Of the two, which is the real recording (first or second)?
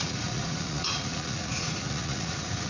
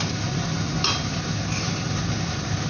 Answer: second